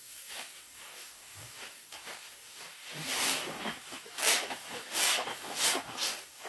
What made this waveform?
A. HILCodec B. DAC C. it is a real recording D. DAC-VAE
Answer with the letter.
B